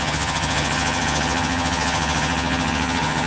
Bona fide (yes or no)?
no